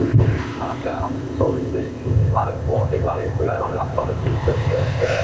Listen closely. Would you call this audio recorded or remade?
remade